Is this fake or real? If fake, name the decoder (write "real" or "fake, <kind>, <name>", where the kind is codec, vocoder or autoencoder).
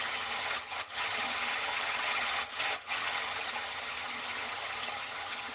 fake, vocoder, HiFi-GAN